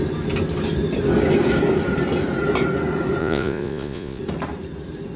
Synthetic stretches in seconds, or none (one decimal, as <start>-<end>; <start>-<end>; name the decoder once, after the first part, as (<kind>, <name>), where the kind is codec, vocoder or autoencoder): 3.2-4.2 (vocoder, Vocos)